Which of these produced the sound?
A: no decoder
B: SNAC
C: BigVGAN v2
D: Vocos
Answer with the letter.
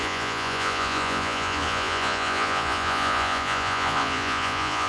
D